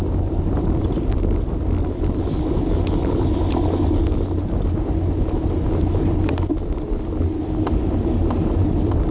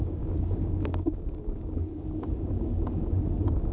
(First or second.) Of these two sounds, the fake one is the second